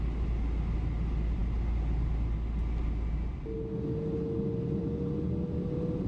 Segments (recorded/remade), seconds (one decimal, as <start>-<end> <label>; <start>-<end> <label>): 0.0-6.1 recorded